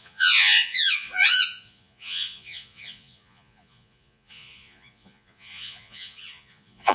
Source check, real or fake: fake